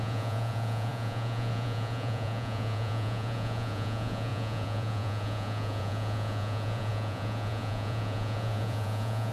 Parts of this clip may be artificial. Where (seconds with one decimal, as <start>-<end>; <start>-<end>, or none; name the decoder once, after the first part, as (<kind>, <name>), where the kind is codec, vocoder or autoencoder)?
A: 0.0-9.3 (vocoder, Vocos)